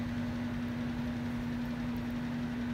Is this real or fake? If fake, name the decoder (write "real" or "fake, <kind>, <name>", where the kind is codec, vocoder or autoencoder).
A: real